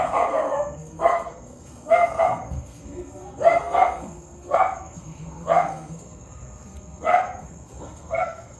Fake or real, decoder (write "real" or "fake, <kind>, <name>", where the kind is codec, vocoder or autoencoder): fake, codec, SNAC